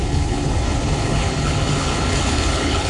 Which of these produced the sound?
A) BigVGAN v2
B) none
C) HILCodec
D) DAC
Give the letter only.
C